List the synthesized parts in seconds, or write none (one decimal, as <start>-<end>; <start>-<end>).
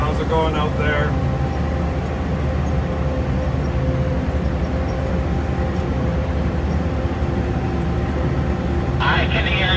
5.7-8.9